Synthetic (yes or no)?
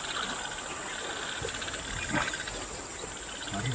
no